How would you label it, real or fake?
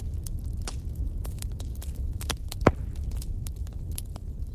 real